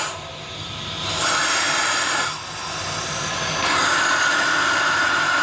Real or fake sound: real